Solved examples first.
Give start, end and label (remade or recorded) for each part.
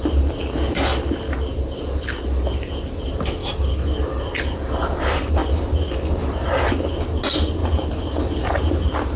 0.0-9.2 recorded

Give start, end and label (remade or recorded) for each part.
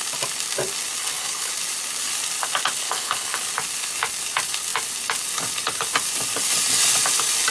0.0-1.0 recorded; 1.0-1.5 remade; 1.5-2.8 recorded; 2.8-3.5 remade; 3.5-7.5 recorded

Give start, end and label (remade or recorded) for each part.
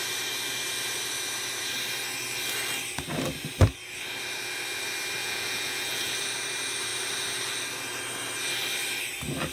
0.0-5.2 recorded; 5.2-6.1 remade; 6.1-9.5 recorded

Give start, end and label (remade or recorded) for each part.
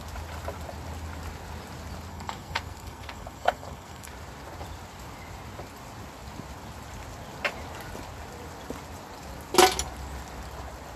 0.0-2.1 recorded; 2.1-4.1 remade; 4.1-11.0 recorded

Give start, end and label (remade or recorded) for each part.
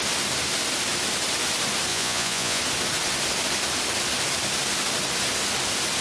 0.0-1.9 recorded; 1.9-2.6 remade; 2.6-6.0 recorded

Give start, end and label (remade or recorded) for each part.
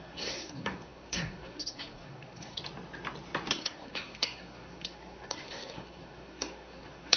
0.0-2.6 remade; 2.6-3.5 recorded; 3.5-7.2 remade